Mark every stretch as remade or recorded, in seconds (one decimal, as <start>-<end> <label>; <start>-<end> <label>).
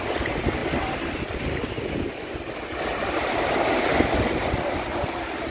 0.0-5.5 recorded